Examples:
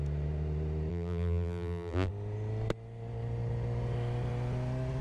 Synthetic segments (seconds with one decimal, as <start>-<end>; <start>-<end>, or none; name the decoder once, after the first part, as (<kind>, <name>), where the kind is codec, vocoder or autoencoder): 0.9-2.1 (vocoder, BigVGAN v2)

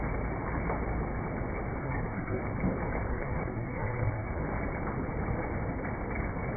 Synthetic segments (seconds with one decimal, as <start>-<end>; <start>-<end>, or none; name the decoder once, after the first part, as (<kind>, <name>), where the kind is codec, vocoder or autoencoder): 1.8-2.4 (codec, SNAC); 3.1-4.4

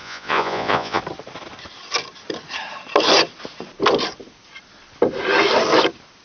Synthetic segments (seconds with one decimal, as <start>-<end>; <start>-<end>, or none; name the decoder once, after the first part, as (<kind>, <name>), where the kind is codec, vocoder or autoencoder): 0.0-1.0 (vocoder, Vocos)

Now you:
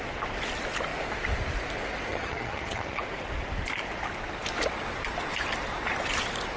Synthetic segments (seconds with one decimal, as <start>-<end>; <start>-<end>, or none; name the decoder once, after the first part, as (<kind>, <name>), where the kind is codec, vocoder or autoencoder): 2.1-3.0 (vocoder, HiFi-GAN)

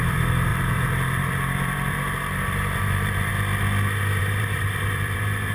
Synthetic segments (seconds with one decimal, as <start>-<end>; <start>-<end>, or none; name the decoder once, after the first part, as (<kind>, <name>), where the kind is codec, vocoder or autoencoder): 0.0-3.3 (vocoder, BigVGAN v2); 4.2-5.5

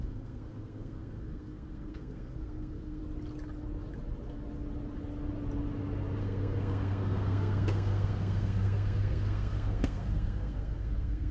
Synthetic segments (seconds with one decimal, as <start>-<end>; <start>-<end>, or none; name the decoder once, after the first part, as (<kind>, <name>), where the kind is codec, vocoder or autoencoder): 0.0-3.0 (codec, SNAC); 6.2-11.3

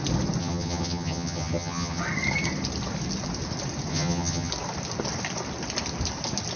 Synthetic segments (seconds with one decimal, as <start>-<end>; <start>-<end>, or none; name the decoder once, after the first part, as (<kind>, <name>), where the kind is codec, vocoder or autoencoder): 0.4-2.0 (vocoder, HiFi-GAN); 3.9-4.5